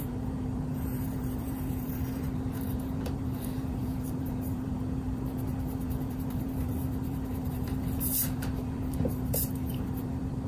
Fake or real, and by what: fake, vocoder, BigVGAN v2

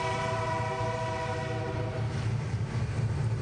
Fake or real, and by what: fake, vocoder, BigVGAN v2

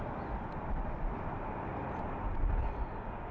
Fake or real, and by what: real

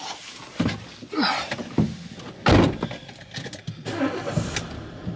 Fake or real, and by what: real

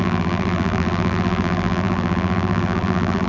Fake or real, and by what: fake, vocoder, BigVGAN v2